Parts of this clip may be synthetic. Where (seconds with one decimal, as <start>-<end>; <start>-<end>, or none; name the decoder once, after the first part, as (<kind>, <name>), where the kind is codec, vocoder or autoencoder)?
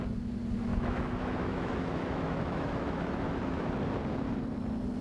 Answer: 0.7-3.7 (autoencoder, DAC-VAE)